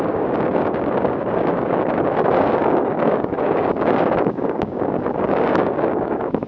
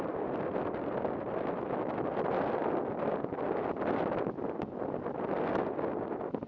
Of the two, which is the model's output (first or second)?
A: first